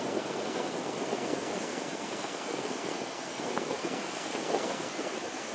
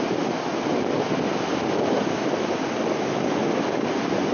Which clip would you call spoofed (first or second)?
first